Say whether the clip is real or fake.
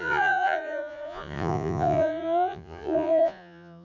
fake